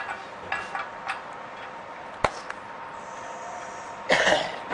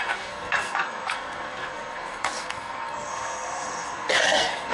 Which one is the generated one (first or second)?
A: second